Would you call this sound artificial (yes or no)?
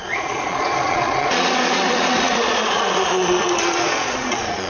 yes